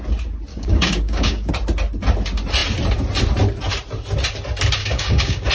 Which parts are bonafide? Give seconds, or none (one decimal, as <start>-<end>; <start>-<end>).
0.0-0.5; 1.5-4.8